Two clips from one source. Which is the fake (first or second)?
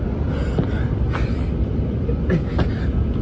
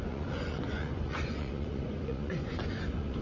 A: second